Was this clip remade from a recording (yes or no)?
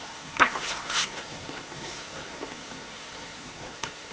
yes